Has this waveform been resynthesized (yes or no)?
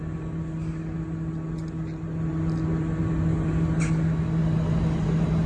no